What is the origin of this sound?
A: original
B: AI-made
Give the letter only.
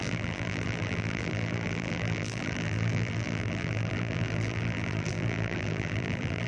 B